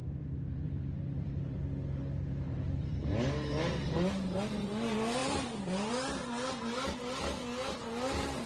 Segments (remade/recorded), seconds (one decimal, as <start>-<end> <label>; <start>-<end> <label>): 0.0-3.1 remade; 3.1-5.2 recorded; 5.2-5.9 remade; 5.9-8.5 recorded